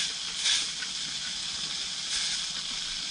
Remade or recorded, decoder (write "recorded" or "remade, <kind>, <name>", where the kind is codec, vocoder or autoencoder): recorded